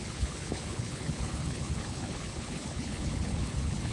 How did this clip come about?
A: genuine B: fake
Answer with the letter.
B